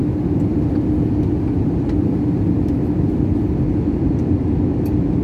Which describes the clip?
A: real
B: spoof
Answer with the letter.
A